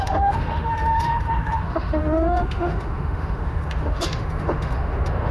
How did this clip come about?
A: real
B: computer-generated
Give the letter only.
B